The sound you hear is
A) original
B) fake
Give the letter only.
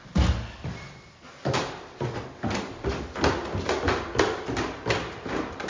A